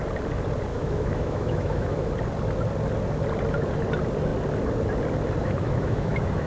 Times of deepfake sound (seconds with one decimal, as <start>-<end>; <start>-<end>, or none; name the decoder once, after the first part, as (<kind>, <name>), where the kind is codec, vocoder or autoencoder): 0.7-2.1 (autoencoder, DAC-VAE); 5.4-6.5